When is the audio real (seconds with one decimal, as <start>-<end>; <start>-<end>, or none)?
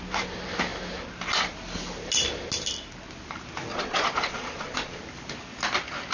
0.0-3.7; 5.0-6.1